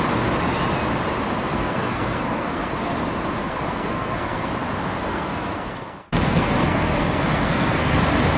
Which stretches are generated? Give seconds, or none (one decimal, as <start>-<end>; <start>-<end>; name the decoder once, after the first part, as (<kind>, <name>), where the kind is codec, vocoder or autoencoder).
1.5-2.8 (codec, SNAC); 3.4-4.5; 5.0-8.0